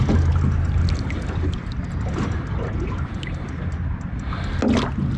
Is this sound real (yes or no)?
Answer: yes